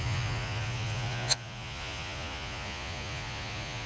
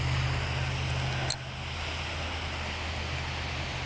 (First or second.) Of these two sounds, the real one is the second